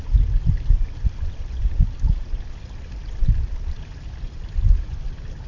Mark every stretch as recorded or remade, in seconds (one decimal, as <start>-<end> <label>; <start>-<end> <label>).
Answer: 0.0-5.5 recorded